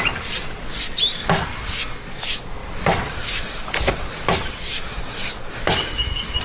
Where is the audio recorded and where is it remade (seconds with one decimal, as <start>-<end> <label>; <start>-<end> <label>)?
0.0-6.4 recorded

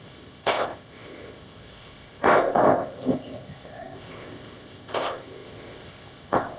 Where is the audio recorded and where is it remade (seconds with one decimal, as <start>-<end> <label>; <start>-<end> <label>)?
0.0-6.6 remade

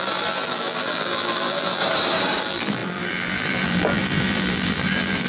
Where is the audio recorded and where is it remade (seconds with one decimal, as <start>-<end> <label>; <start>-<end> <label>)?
0.0-1.8 remade; 1.8-2.4 recorded; 2.4-5.3 remade

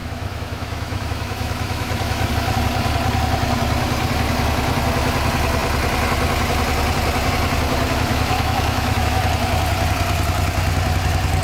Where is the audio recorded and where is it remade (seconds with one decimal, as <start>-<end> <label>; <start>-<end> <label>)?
0.0-2.3 remade; 2.3-8.1 recorded; 8.1-9.2 remade; 9.2-11.4 recorded

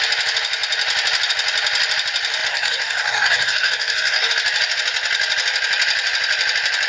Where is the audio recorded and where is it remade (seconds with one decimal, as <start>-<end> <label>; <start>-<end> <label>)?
0.0-2.5 recorded; 2.5-4.3 remade; 4.3-6.9 recorded

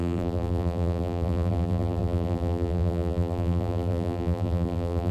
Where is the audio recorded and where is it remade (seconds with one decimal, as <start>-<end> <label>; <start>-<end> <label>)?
0.0-5.1 remade

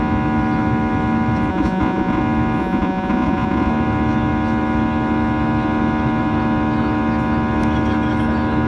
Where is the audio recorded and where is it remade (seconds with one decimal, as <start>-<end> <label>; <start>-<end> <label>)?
0.0-1.5 recorded; 1.5-2.2 remade; 2.2-2.6 recorded; 2.6-3.7 remade; 3.7-8.7 recorded

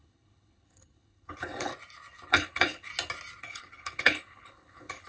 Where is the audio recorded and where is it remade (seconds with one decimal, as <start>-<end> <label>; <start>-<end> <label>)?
0.0-1.7 remade; 1.7-2.3 recorded; 2.3-2.9 remade; 2.9-3.4 recorded; 3.4-5.1 remade